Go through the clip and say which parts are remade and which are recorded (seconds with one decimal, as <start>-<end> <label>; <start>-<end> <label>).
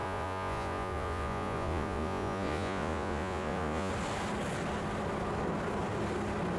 0.0-3.9 remade; 3.9-6.6 recorded